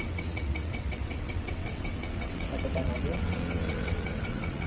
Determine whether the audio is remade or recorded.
remade